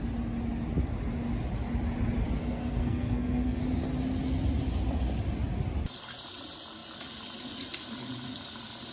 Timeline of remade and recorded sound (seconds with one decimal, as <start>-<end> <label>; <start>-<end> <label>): 0.0-2.4 recorded; 2.4-3.6 remade; 3.6-8.9 recorded